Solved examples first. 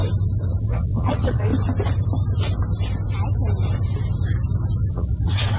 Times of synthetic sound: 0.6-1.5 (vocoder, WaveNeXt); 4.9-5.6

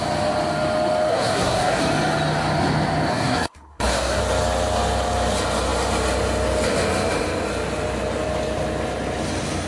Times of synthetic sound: 1.1-1.8 (codec, SNAC); 3.1-4.2